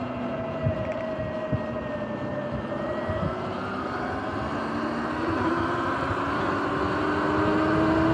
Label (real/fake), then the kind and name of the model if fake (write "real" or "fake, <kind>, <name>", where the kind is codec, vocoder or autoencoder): real